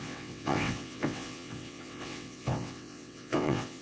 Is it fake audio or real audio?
fake